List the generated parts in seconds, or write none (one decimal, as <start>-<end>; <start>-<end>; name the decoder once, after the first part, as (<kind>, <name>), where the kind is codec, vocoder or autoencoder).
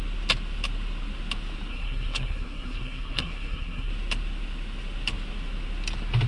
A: 1.7-3.9 (codec, SNAC)